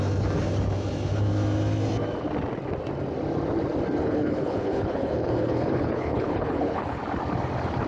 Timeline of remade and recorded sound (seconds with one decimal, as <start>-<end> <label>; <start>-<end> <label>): 0.0-4.0 recorded; 4.0-7.0 remade; 7.0-7.9 recorded